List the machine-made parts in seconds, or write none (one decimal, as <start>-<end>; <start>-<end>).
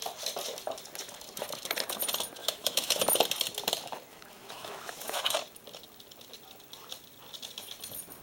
2.4-3.0; 4.1-5.2